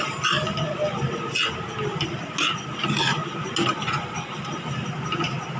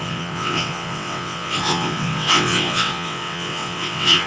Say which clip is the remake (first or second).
second